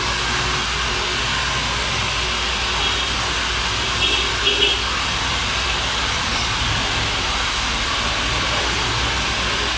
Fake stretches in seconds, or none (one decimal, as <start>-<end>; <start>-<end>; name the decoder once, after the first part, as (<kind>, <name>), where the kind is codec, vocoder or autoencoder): 4.7-8.6 (vocoder, BigVGAN v2)